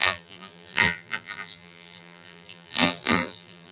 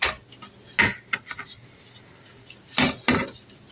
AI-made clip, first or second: first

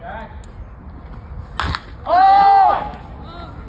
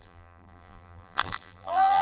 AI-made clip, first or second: second